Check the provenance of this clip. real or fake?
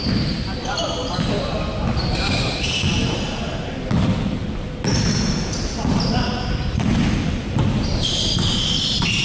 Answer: real